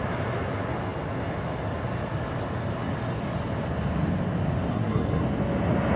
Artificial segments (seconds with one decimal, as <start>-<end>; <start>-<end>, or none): 4.7-5.2